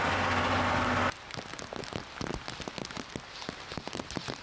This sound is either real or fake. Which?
real